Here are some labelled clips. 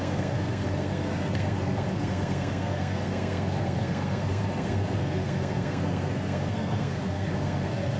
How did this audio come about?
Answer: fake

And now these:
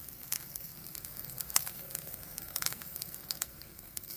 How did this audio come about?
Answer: fake